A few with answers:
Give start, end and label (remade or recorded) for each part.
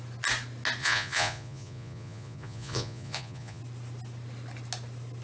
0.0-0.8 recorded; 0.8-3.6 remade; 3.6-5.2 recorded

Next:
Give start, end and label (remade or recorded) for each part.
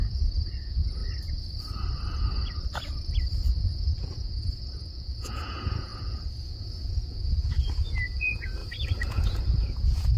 0.0-1.0 remade; 1.0-3.9 recorded; 3.9-8.6 remade; 8.6-9.1 recorded; 9.1-10.2 remade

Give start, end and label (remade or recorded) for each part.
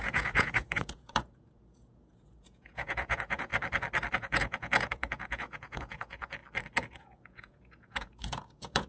0.0-3.5 remade; 3.5-4.1 recorded; 4.1-6.4 remade; 6.4-6.9 recorded; 6.9-8.9 remade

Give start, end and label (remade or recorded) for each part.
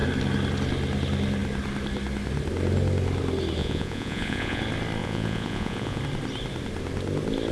0.0-3.6 recorded; 3.6-4.6 remade; 4.6-5.0 recorded; 5.0-6.0 remade; 6.0-7.5 recorded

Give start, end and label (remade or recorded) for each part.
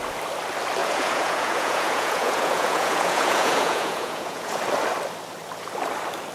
0.0-0.8 recorded; 0.8-4.6 remade; 4.6-6.3 recorded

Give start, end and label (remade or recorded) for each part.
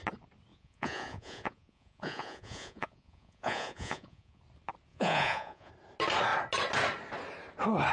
0.0-0.5 recorded; 0.5-4.4 remade; 4.4-4.9 recorded; 4.9-5.7 remade; 5.7-7.9 recorded